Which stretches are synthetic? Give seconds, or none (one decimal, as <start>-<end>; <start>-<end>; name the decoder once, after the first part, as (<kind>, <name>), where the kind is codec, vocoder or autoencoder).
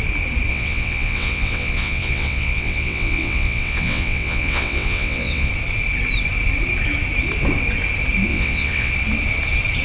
0.5-5.5 (vocoder, WaveNeXt); 8.3-8.9